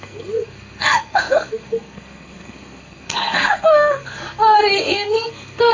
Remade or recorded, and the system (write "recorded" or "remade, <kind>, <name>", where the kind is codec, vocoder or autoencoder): remade, codec, SNAC